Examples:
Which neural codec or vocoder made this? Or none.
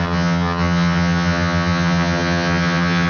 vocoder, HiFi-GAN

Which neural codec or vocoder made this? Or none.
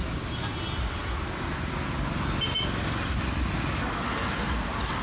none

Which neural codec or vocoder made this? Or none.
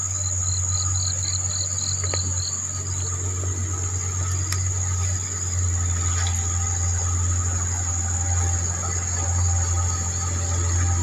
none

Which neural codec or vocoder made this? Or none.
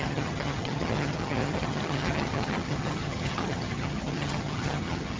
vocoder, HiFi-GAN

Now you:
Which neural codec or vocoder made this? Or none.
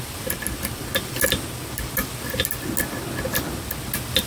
none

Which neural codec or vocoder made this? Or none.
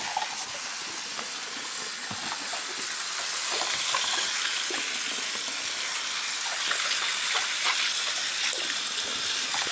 none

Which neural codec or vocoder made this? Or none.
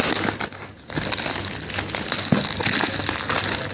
none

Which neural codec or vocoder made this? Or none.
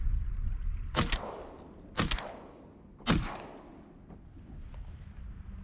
none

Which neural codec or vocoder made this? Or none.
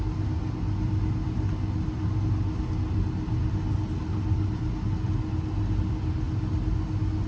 none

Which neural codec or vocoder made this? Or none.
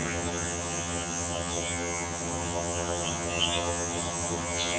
vocoder, HiFi-GAN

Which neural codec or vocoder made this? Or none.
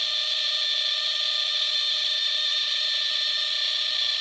none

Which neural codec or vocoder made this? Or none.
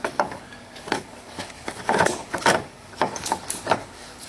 codec, DAC